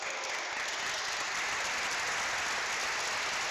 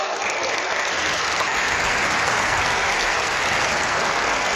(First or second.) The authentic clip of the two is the first